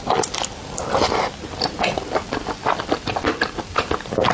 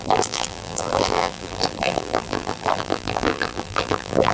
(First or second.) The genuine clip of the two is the first